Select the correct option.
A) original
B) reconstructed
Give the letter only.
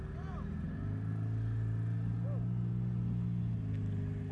A